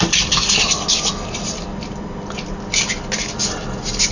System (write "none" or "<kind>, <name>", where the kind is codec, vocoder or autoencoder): none